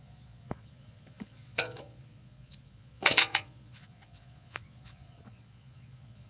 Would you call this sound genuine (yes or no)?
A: no